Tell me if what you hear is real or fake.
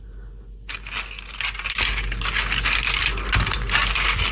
real